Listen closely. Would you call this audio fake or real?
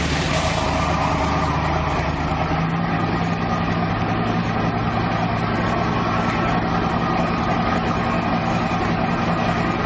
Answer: real